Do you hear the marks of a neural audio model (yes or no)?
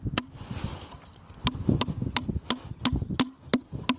no